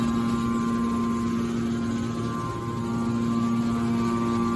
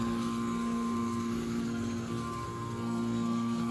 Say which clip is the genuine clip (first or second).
first